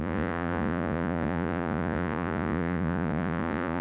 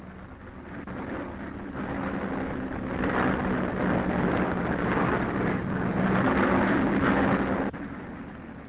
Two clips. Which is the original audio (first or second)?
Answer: second